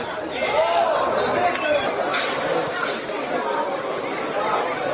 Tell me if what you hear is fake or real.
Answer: real